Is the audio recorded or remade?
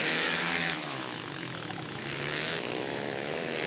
remade